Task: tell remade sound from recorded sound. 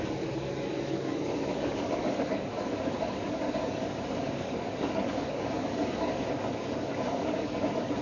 remade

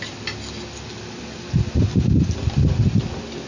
recorded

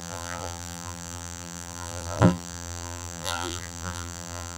remade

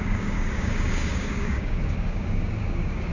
remade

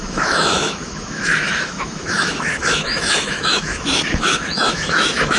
remade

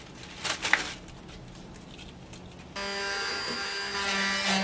recorded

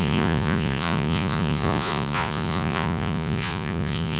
remade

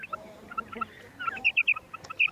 recorded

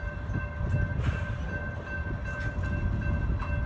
recorded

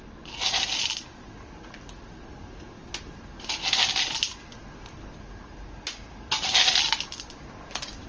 recorded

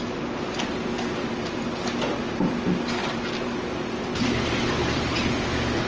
recorded